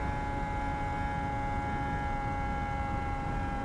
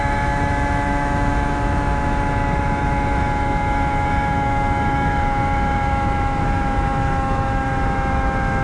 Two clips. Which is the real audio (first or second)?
first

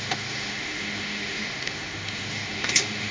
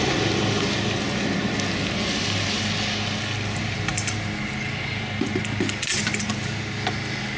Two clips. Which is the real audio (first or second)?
second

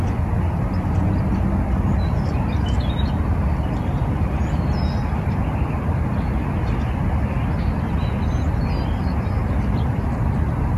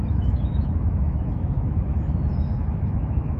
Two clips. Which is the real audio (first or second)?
first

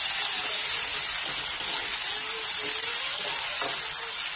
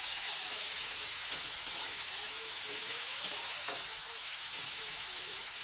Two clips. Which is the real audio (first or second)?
first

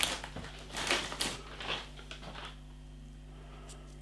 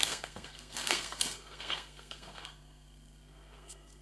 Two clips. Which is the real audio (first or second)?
first